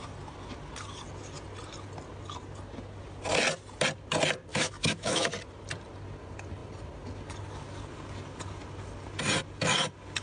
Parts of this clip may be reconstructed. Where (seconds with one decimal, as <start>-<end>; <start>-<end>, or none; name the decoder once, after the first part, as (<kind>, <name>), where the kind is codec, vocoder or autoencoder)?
4.5-5.3 (autoencoder, DAC-VAE)